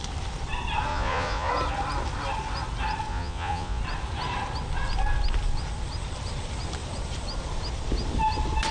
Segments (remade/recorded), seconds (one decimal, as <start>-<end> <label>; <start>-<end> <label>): 0.0-0.9 recorded; 0.9-1.5 remade; 1.5-3.1 recorded; 3.1-3.8 remade; 3.8-8.7 recorded